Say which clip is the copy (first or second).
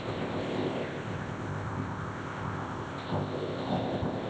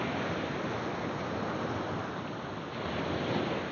first